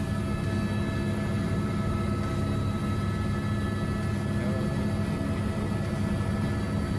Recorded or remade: recorded